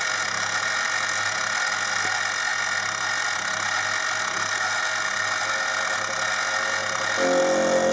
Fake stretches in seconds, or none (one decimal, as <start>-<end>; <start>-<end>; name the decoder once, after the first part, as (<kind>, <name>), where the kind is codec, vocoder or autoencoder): none